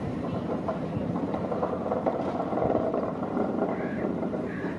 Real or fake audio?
fake